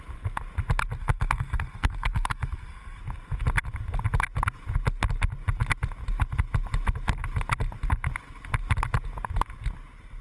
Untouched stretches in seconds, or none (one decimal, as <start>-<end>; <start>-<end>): 0.0-1.0; 3.0-10.2